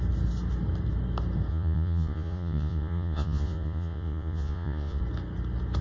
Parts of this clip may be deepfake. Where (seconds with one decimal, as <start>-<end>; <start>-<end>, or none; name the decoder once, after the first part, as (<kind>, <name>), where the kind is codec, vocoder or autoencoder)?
1.5-5.0 (vocoder, Vocos)